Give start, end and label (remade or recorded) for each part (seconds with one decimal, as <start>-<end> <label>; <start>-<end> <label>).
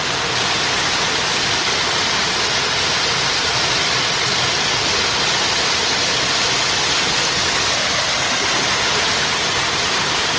0.0-7.4 recorded; 7.4-8.7 remade; 8.7-10.4 recorded